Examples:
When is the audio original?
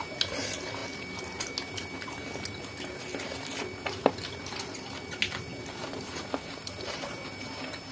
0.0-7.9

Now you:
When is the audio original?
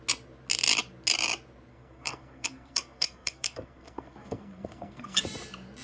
0.0-1.7; 5.2-5.8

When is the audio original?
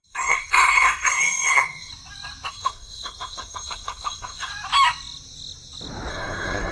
1.9-2.5; 4.5-6.1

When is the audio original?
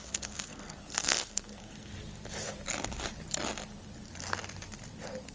1.9-5.3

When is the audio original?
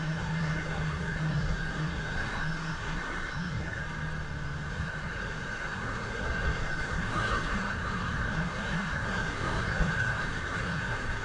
3.8-4.7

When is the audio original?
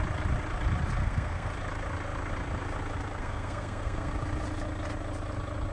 0.0-1.0; 1.5-3.2; 4.1-5.7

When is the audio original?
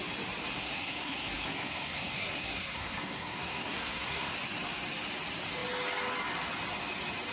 0.0-0.5; 4.3-7.3